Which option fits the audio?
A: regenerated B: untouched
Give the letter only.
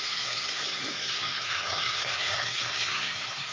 A